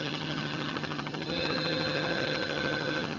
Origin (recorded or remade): remade